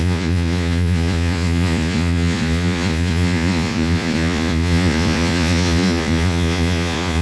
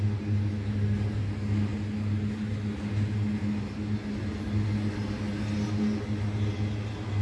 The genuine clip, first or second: second